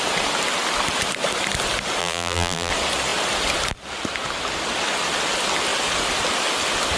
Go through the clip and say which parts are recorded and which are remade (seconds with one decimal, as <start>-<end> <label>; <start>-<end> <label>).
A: 0.0-2.0 recorded; 2.0-2.7 remade; 2.7-7.0 recorded